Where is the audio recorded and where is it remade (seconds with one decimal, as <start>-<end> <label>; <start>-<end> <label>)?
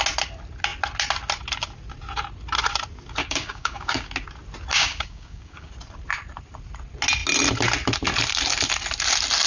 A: 0.0-3.2 recorded; 3.2-4.1 remade; 4.1-4.7 recorded; 4.7-5.7 remade; 5.7-9.5 recorded